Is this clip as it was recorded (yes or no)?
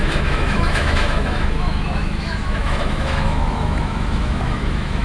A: no